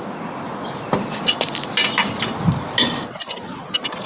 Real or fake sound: real